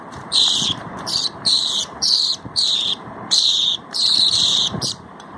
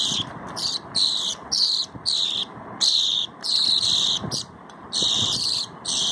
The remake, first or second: first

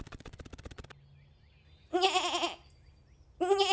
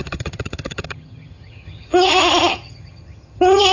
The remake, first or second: second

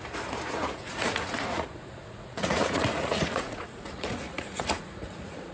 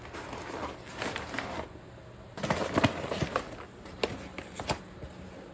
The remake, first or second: first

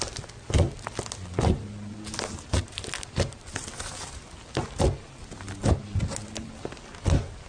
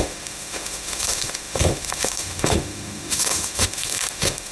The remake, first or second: second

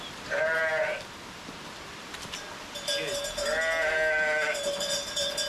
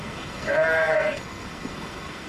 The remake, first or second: second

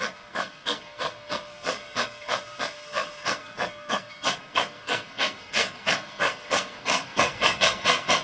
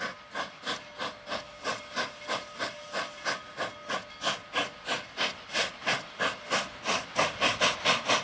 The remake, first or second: first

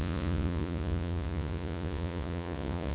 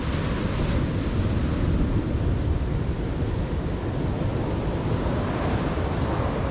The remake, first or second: first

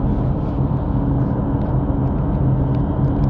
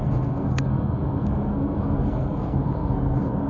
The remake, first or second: second